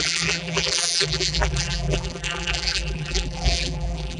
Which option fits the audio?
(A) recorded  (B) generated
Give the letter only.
B